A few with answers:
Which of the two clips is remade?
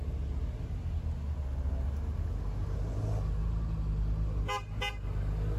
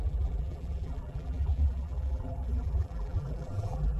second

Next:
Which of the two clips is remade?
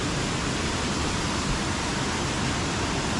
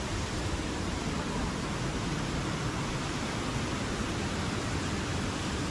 second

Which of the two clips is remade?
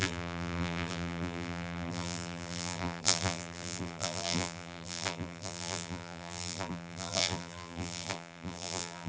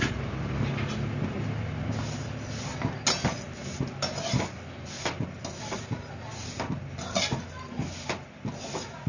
first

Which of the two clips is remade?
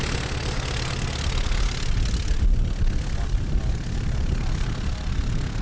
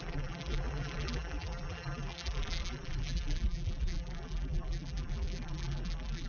second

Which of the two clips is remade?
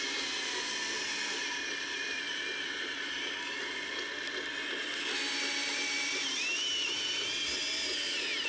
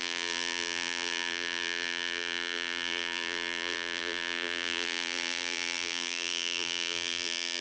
second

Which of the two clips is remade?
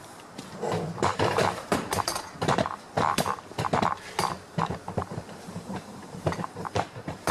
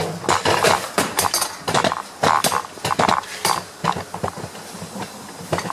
first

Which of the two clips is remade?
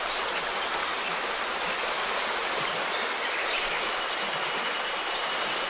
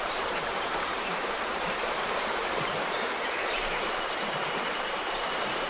second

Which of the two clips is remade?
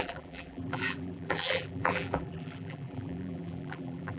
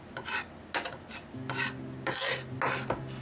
first